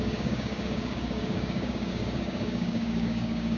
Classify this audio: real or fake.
fake